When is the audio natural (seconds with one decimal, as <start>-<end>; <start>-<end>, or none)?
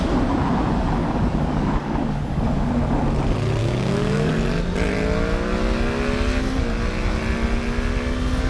0.0-1.0; 2.7-3.6; 4.3-8.5